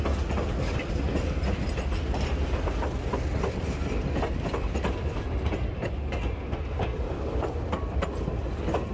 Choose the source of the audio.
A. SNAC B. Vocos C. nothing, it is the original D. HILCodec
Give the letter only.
C